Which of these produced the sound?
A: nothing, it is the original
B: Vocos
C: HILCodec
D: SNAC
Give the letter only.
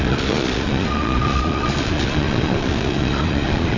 B